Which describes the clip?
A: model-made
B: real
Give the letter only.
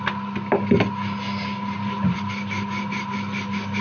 B